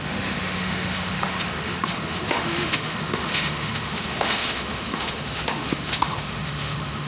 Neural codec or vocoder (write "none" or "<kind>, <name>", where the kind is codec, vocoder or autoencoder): autoencoder, DAC-VAE